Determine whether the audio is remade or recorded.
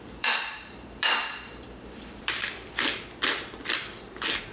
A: remade